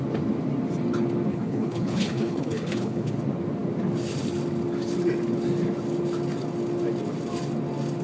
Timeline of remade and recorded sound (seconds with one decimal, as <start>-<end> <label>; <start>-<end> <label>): 0.0-1.3 recorded; 1.3-3.1 remade; 3.1-8.0 recorded